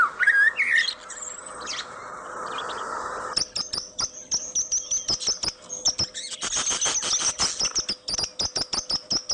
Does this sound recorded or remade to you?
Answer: recorded